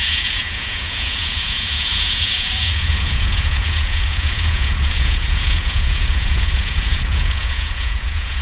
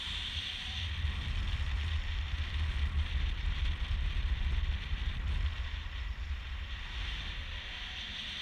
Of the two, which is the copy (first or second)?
first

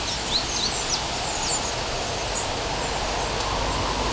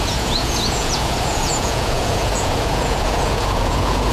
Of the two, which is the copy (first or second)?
second